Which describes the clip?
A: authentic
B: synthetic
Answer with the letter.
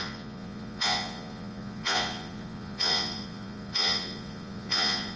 B